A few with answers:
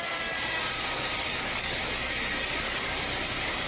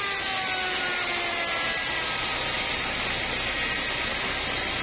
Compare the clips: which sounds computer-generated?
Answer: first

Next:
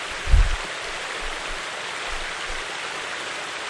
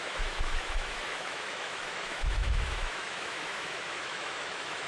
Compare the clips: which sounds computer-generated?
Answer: second